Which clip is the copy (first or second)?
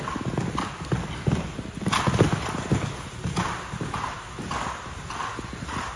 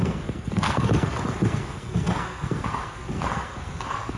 second